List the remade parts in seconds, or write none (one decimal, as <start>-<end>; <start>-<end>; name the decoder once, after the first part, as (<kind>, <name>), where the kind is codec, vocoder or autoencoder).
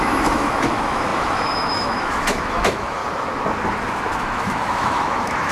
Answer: 0.0-3.0 (autoencoder, DAC-VAE); 3.9-5.5